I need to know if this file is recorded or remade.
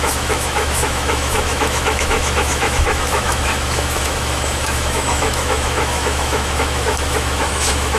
remade